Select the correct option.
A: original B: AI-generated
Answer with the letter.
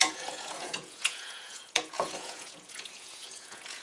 B